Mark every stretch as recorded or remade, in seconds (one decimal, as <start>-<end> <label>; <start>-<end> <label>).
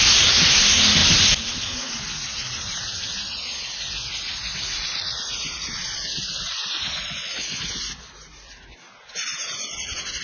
0.0-4.9 recorded; 4.9-5.8 remade; 5.8-7.2 recorded; 7.2-7.7 remade; 7.7-10.2 recorded